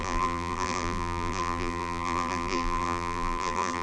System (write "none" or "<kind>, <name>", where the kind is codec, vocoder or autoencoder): vocoder, BigVGAN v2